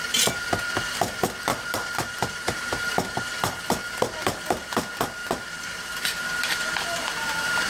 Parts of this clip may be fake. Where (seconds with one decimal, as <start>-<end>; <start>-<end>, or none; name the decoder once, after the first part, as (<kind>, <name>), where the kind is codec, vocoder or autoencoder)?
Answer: 1.5-2.8 (vocoder, BigVGAN v2); 5.2-7.7